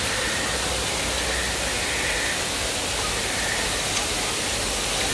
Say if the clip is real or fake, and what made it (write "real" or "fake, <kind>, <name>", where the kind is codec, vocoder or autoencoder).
real